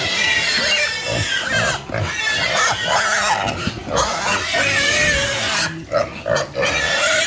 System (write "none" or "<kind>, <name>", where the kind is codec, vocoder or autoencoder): none